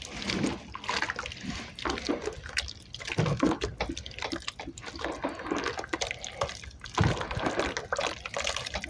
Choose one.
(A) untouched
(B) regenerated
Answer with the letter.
A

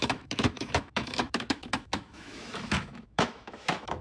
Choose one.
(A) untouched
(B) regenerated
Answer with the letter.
B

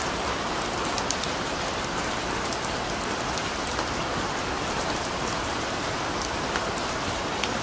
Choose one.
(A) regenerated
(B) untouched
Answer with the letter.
B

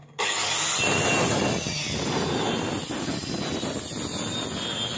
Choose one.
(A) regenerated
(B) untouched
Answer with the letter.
B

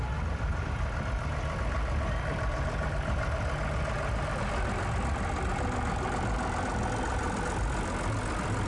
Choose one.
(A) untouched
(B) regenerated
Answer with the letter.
A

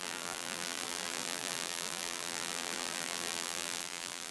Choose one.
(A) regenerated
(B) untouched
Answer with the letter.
A